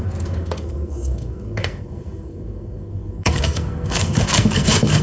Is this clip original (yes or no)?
no